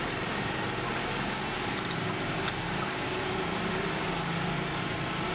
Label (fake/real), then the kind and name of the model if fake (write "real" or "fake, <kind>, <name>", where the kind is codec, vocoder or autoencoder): real